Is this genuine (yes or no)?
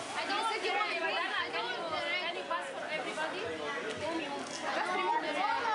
yes